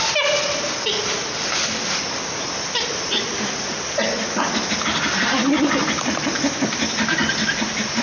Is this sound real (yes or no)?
yes